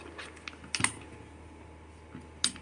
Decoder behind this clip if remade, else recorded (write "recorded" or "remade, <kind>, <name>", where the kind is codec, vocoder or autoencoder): recorded